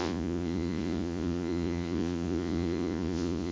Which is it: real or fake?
fake